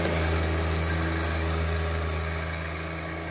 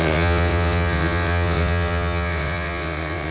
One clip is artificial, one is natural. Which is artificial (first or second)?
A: second